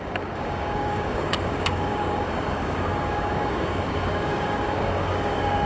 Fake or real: fake